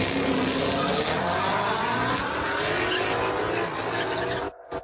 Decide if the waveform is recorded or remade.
recorded